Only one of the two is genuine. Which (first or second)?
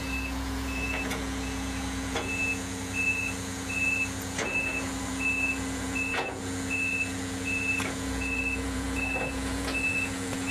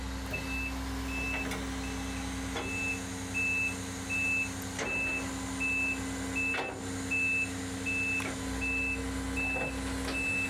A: second